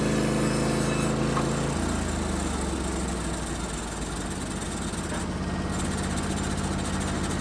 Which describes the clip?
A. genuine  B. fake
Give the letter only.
A